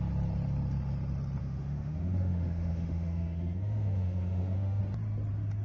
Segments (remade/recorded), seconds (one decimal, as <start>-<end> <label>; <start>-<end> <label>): 0.0-1.4 recorded; 1.4-4.8 remade; 4.8-5.6 recorded